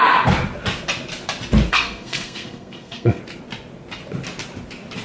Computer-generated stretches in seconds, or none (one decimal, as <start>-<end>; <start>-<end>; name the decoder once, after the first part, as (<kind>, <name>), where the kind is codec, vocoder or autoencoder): 1.7-3.2 (codec, SNAC)